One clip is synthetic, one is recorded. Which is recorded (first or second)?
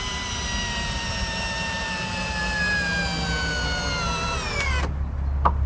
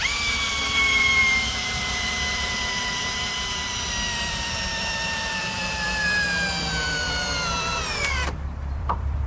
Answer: first